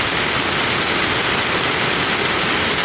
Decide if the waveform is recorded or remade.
recorded